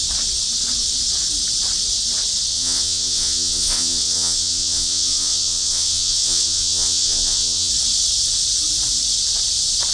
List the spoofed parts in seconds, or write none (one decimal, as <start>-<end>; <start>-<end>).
2.5-7.7

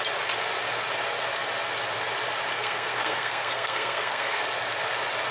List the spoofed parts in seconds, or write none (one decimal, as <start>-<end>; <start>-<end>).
2.5-4.4

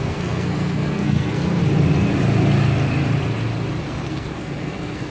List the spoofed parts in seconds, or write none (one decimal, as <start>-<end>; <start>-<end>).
0.0-1.6; 3.8-5.1

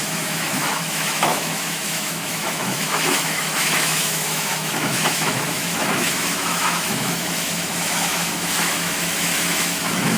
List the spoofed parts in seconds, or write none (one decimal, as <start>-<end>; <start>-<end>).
0.0-10.2

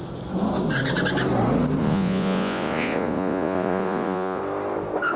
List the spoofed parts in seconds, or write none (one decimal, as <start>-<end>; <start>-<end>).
1.8-4.4